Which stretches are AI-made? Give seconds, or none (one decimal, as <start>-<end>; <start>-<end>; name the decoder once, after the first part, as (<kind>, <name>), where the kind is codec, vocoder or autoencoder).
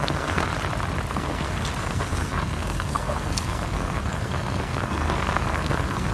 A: 0.0-0.5 (codec, SNAC); 1.1-6.1